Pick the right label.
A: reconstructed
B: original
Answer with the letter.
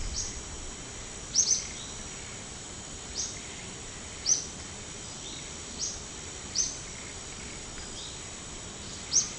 B